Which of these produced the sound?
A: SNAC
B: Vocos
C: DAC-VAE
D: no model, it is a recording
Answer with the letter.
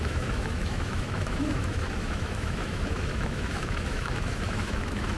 C